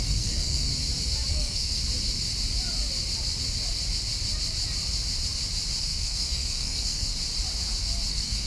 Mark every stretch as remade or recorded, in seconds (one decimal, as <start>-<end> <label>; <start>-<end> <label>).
0.0-0.7 remade; 0.7-1.3 recorded; 1.3-1.8 remade; 1.8-5.8 recorded; 5.8-7.1 remade; 7.1-8.1 recorded; 8.1-8.5 remade